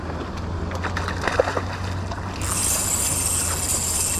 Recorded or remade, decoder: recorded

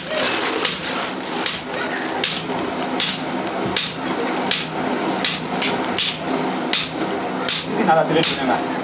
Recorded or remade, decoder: recorded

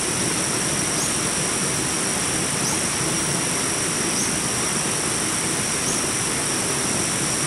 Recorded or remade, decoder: recorded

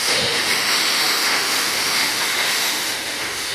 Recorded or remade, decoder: remade, autoencoder, DAC-VAE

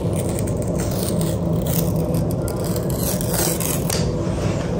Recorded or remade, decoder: recorded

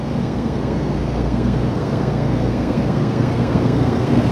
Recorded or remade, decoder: remade, codec, SNAC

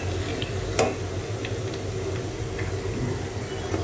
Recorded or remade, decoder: recorded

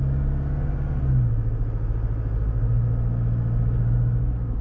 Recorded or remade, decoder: recorded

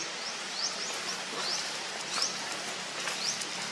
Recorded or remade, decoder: recorded